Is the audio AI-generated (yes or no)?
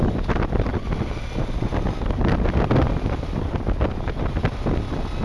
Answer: no